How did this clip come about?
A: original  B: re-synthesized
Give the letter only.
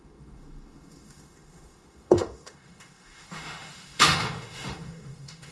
B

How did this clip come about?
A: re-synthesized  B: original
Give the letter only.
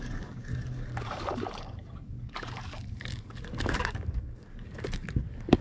A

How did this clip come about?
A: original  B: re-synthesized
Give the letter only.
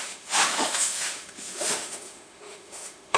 B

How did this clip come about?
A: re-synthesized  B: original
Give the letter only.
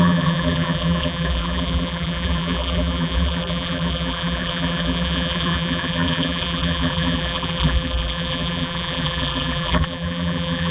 A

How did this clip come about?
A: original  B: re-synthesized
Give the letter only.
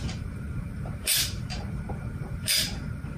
B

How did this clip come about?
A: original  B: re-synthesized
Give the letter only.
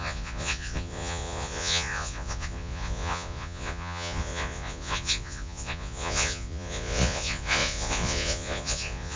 B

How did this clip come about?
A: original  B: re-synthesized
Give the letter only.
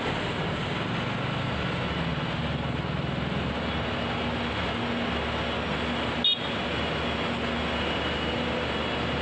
A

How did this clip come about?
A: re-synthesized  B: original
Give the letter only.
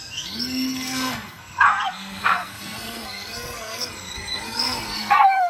A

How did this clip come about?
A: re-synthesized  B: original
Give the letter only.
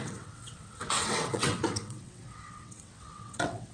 A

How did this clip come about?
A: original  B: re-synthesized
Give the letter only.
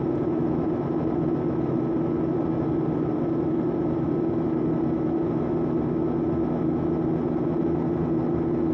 A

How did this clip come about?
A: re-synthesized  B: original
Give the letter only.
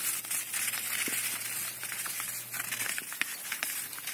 B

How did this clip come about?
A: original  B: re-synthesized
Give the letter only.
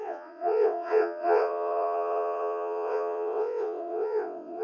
B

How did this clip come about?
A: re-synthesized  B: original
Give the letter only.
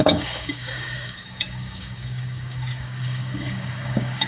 A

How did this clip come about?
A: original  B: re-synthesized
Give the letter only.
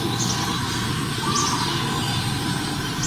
A